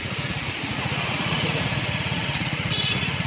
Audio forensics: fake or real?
fake